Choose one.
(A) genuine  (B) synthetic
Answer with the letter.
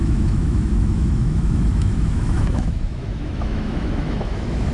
B